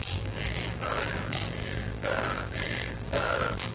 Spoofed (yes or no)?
yes